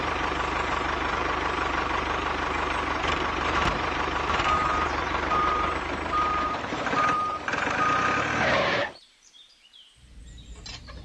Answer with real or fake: fake